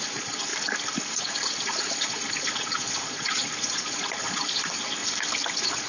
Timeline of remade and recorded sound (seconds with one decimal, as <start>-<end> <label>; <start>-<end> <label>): 0.0-0.5 remade; 0.5-1.1 recorded; 1.1-5.0 remade; 5.0-5.5 recorded; 5.5-5.9 remade

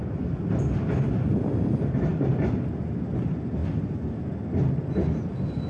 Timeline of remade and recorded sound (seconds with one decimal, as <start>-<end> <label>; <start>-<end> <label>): 0.0-5.7 recorded

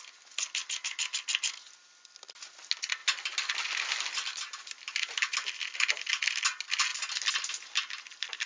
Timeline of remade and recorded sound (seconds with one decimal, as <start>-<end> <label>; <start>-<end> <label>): 0.0-8.5 recorded

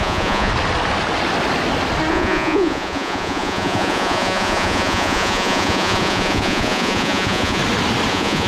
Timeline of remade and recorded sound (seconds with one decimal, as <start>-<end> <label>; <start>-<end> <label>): 0.0-0.5 remade; 0.5-2.1 recorded; 2.1-7.6 remade; 7.6-8.1 recorded; 8.1-8.5 remade

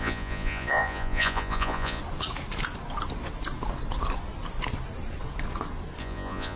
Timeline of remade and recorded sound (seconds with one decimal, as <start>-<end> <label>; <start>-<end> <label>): 0.0-2.0 remade; 2.0-6.0 recorded; 6.0-6.6 remade

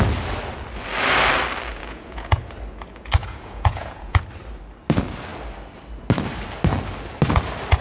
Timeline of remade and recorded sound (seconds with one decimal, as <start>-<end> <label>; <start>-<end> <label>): 0.0-1.7 recorded; 1.7-2.4 remade; 2.4-3.2 recorded; 3.2-4.2 remade; 4.2-7.8 recorded

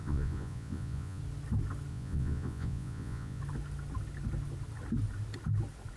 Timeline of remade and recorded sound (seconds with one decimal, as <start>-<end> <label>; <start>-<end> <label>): 0.0-1.2 remade; 1.2-1.9 recorded; 1.9-3.4 remade; 3.4-6.0 recorded

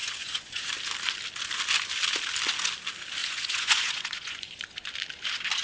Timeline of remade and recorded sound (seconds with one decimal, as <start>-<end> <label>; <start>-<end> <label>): 0.0-0.7 remade; 0.7-3.2 recorded; 3.2-4.9 remade; 4.9-5.6 recorded